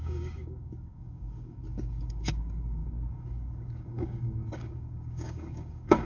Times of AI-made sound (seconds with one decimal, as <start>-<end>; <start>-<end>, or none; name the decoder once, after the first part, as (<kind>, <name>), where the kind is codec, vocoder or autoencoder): 0.0-6.0 (codec, DAC)

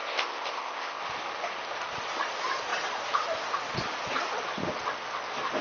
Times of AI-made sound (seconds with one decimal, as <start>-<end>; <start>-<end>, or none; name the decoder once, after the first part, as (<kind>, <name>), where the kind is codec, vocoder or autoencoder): 0.0-1.0 (codec, ZipCodec)

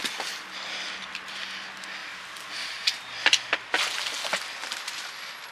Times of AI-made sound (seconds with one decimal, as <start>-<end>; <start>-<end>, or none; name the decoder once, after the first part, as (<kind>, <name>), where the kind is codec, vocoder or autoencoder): none

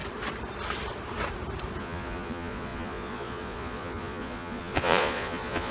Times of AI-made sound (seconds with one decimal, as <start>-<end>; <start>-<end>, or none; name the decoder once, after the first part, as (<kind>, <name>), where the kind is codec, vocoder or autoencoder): 1.8-5.7 (vocoder, Vocos)

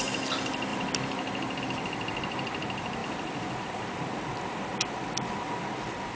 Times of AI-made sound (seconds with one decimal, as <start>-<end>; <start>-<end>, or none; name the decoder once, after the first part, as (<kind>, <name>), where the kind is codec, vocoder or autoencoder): 0.7-1.6 (vocoder, BigVGAN v2); 3.0-4.4

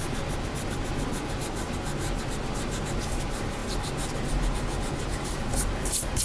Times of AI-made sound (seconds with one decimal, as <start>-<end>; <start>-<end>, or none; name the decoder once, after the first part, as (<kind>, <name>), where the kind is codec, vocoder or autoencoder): none

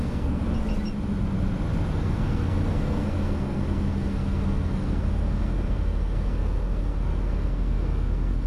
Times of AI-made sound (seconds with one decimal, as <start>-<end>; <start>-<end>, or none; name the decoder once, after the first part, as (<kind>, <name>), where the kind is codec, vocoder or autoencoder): 0.0-0.4 (codec, SNAC); 1.9-8.5